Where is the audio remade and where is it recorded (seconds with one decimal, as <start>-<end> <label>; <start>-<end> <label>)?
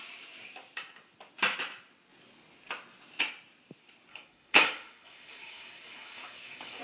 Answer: 0.0-4.1 recorded; 4.1-6.8 remade